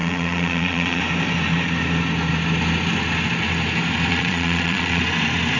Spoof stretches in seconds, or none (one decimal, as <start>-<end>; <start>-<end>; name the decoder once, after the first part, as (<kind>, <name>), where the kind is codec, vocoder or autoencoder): 0.0-1.0 (vocoder, Vocos); 4.1-5.0